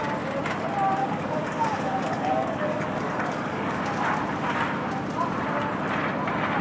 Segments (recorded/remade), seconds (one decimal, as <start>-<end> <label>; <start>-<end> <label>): 0.0-1.0 recorded; 1.0-3.8 remade; 3.8-6.6 recorded